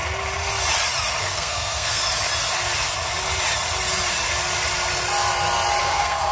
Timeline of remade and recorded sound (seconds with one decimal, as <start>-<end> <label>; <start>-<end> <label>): 0.0-1.2 recorded; 1.2-2.0 remade; 2.0-5.8 recorded; 5.8-6.3 remade